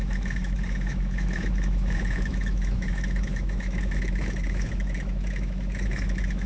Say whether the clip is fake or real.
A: fake